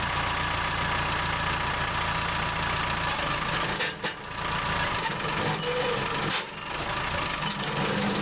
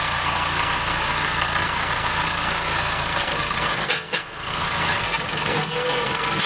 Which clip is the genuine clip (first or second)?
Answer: first